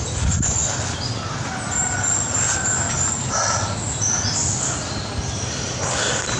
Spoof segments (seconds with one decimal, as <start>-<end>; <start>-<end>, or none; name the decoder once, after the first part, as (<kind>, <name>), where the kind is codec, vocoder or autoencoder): none